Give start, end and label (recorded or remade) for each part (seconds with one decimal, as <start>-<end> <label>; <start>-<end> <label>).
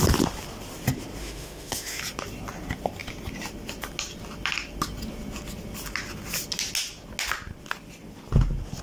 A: 0.0-1.2 recorded; 1.2-2.0 remade; 2.0-8.8 recorded